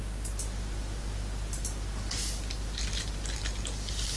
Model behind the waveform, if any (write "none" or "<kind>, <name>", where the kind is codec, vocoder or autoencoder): none